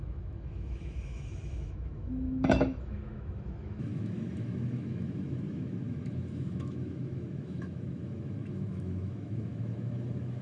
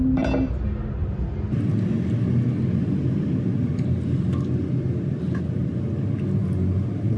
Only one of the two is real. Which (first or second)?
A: second